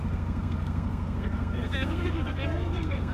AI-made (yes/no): yes